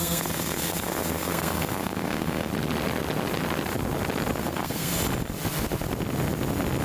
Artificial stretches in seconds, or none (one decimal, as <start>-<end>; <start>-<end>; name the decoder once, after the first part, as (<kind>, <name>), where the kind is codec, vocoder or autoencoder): 0.0-2.5 (codec, SNAC); 4.4-4.9